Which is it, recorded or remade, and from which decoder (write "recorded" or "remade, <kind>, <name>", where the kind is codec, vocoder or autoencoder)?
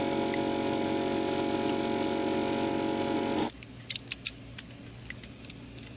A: recorded